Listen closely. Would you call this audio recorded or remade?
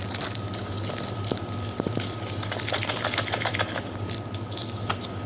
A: recorded